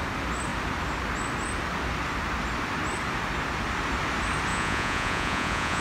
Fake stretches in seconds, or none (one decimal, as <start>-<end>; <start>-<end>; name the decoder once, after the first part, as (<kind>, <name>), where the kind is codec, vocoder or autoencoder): 4.5-5.8 (vocoder, Vocos)